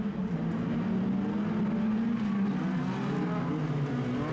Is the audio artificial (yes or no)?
no